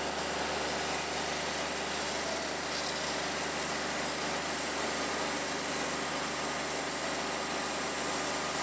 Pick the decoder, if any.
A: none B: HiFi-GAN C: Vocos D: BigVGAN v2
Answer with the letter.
A